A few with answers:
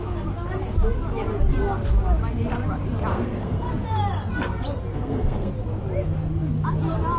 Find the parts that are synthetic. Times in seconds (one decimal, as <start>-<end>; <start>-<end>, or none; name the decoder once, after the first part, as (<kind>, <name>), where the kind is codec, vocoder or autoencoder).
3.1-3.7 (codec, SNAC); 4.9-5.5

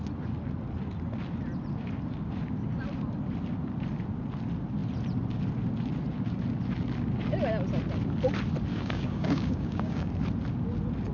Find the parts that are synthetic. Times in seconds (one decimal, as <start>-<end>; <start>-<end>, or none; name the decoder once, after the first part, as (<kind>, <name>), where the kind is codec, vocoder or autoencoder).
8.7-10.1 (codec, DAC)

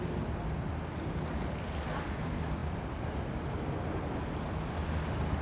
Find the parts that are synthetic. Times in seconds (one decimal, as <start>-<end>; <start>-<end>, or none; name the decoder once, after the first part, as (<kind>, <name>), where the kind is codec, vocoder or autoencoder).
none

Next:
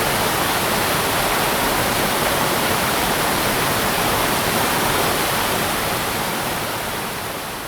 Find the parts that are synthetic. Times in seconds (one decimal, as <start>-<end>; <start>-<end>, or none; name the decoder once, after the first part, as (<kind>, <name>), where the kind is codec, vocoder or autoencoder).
1.8-4.7 (vocoder, BigVGAN v2); 6.3-7.1

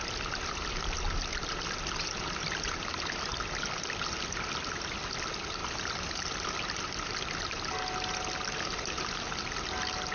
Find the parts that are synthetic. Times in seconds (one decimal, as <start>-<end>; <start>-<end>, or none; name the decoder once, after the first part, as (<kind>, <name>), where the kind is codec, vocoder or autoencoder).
none

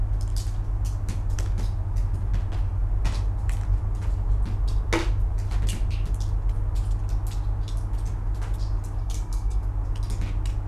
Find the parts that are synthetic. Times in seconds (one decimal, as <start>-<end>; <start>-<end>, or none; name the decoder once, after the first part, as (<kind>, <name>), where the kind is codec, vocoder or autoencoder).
9.0-9.6 (codec, SNAC)

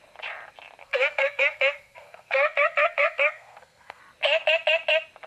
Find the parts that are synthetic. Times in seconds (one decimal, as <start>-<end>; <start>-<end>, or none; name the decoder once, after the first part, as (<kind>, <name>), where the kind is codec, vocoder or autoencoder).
0.8-4.0 (codec, SNAC)

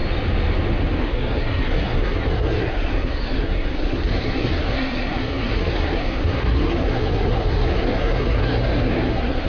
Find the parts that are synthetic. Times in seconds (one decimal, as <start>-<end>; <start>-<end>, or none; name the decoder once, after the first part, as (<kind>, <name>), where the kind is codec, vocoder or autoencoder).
1.0-9.5 (codec, SNAC)